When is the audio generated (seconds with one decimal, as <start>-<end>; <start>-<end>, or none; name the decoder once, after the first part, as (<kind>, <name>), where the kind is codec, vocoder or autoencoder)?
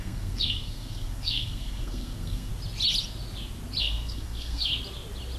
0.0-2.5 (codec, SNAC); 3.8-4.7